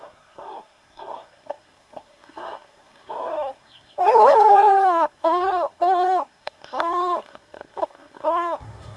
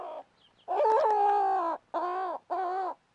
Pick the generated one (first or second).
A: first